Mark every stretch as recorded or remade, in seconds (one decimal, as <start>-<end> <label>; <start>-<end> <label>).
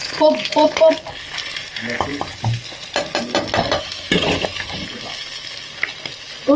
0.0-6.6 recorded